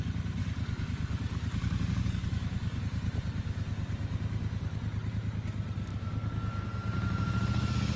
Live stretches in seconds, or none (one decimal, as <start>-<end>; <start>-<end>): 0.0-0.4; 2.8-5.9; 6.6-8.0